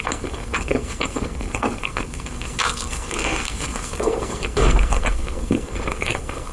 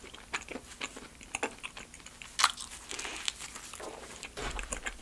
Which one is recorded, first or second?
second